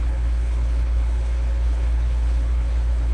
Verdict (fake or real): fake